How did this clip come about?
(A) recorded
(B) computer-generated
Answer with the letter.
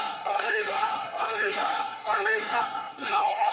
B